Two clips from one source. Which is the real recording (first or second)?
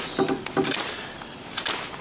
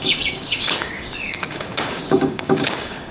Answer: first